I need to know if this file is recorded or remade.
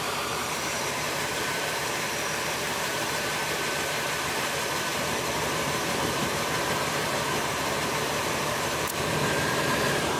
remade